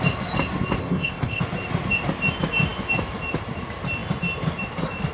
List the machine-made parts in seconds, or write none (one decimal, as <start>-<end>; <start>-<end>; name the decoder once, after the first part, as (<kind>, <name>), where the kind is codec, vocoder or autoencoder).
0.8-1.4 (codec, ZipCodec)